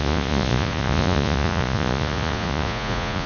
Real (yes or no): no